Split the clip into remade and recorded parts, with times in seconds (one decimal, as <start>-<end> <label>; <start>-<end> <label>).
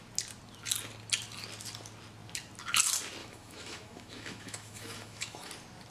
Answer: 0.0-3.2 recorded; 3.2-5.5 remade; 5.5-5.9 recorded